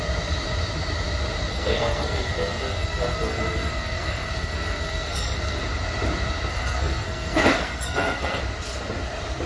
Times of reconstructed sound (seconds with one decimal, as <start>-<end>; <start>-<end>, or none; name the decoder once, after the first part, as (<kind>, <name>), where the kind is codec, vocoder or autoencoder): 1.5-5.6 (codec, SNAC); 6.5-8.4